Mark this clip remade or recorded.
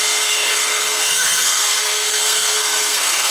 remade